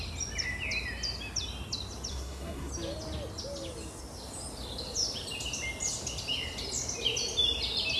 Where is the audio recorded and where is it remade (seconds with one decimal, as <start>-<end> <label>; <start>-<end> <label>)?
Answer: 0.0-2.1 recorded; 2.1-2.7 remade; 2.7-8.0 recorded